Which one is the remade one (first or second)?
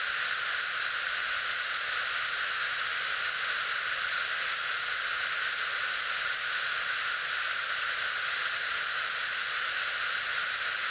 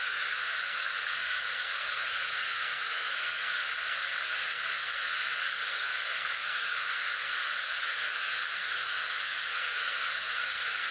second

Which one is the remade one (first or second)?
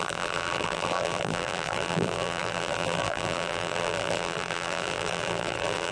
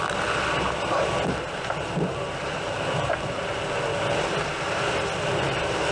first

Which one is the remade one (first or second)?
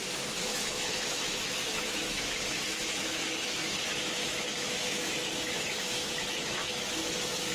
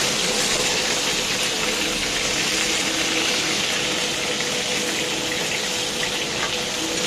first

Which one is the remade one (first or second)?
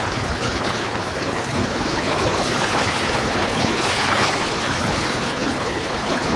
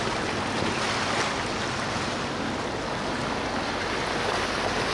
first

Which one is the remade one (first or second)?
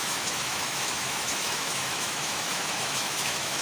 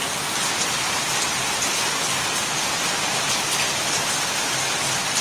first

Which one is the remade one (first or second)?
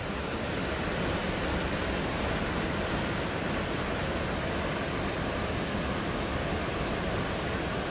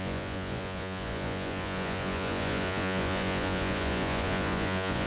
second